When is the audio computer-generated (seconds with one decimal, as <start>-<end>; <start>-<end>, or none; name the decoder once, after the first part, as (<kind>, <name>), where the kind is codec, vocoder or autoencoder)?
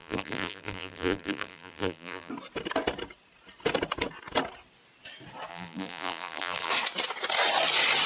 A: 0.0-2.3 (vocoder, BigVGAN v2); 5.5-6.7